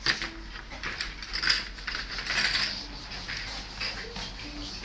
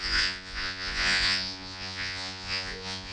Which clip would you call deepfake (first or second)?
second